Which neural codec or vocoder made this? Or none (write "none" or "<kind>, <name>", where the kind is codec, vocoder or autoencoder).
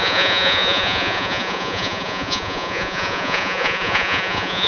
vocoder, Vocos